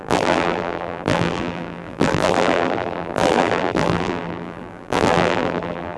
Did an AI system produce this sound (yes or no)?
yes